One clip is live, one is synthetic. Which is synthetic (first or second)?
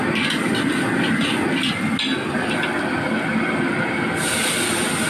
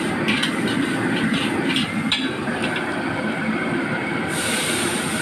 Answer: second